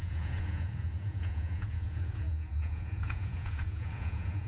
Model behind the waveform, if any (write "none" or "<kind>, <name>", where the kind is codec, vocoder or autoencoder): vocoder, Vocos